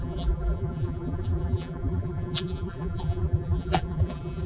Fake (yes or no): yes